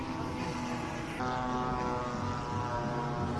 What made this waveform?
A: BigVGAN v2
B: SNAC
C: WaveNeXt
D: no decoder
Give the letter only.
D